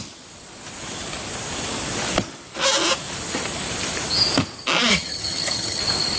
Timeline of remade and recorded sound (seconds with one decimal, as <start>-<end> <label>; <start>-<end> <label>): 0.0-4.9 recorded; 4.9-5.8 remade; 5.8-6.2 recorded